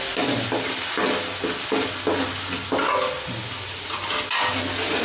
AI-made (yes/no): no